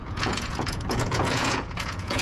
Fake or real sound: fake